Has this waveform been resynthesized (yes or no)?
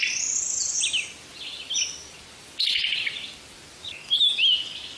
no